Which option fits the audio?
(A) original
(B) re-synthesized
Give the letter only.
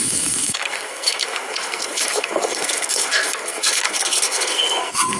B